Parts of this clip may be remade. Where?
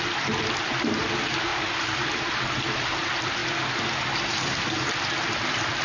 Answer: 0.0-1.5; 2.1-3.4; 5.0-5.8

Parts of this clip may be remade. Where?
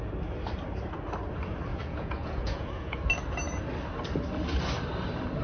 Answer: 1.7-3.1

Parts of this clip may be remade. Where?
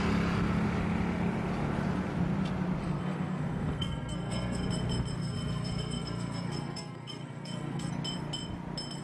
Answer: 2.8-4.7; 5.2-7.9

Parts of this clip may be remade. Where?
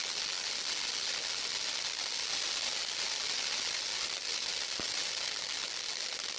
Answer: none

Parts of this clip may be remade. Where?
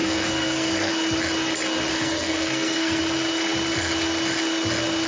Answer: 0.0-0.9; 1.9-3.0